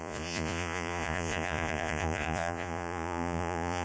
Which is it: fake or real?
fake